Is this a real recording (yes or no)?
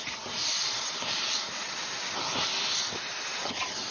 yes